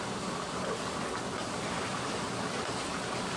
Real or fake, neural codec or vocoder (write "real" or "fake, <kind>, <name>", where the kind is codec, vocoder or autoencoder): real